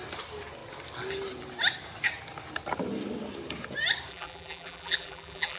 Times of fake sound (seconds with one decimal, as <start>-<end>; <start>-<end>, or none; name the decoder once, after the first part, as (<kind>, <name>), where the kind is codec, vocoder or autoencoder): 4.1-5.6 (vocoder, BigVGAN v2)